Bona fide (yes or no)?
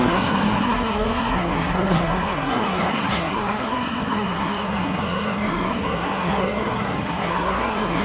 no